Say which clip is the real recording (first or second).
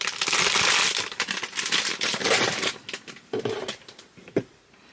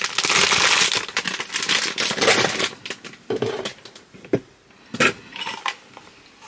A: second